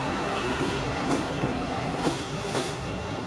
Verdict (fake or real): fake